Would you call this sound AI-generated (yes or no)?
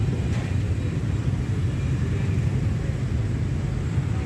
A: no